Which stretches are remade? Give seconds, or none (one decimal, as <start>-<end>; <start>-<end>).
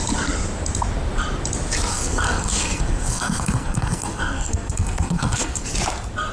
1.9-5.7